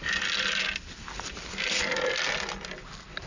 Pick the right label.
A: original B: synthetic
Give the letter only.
A